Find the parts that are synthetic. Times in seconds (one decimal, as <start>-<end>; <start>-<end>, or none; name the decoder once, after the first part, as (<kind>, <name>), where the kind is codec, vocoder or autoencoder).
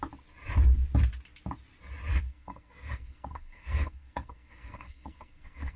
2.1-5.8 (codec, SNAC)